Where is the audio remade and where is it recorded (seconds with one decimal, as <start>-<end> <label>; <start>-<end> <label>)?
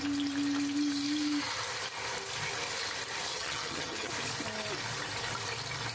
0.0-3.3 recorded; 3.3-4.1 remade; 4.1-5.9 recorded